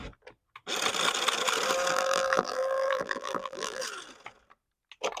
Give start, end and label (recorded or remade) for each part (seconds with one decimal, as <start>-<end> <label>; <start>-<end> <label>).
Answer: 0.0-1.9 recorded; 1.9-3.8 remade; 3.8-5.2 recorded

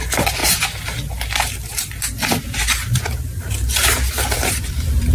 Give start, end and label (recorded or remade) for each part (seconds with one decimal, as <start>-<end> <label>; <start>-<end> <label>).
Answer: 0.0-0.4 remade; 0.4-3.5 recorded; 3.5-5.1 remade

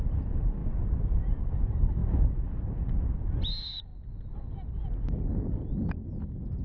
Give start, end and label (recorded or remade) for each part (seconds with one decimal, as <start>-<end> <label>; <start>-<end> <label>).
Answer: 0.0-0.6 remade; 0.6-1.2 recorded; 1.2-3.9 remade; 3.9-6.0 recorded; 6.0-6.6 remade

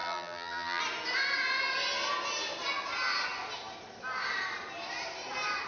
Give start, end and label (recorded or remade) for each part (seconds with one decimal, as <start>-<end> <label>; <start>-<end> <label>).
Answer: 0.0-0.8 remade; 0.8-5.7 recorded

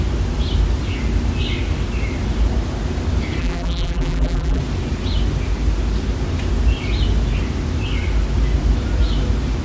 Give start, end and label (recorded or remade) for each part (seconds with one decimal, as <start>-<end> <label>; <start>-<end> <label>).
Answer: 0.0-3.4 recorded; 3.4-4.6 remade; 4.6-9.6 recorded

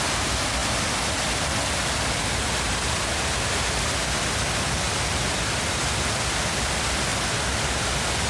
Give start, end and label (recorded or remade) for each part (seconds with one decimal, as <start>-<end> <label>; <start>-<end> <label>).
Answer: 0.0-8.3 recorded